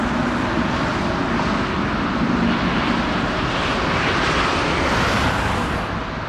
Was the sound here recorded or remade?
recorded